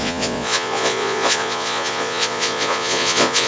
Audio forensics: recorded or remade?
remade